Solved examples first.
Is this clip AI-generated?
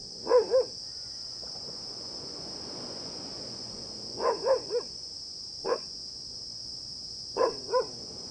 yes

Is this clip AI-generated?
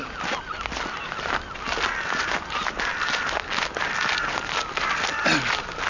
no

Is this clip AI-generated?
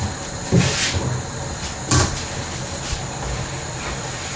no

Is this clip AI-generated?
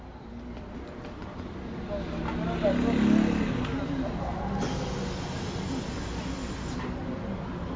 no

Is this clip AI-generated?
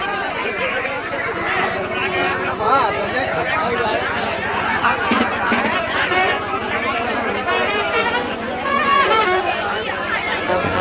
yes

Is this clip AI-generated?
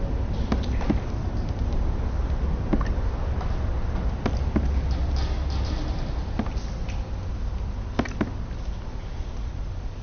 no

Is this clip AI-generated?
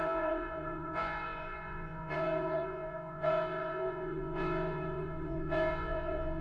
yes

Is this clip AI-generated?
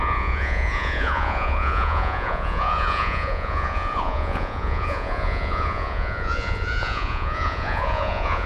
yes